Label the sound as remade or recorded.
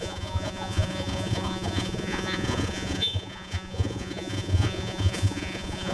remade